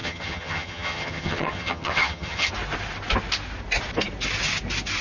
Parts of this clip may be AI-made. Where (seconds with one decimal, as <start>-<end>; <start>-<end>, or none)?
0.0-2.5